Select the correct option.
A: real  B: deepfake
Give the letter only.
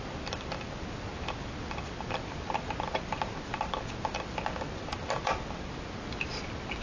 A